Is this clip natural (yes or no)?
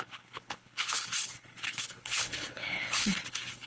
no